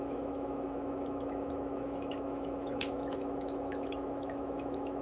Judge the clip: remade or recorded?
remade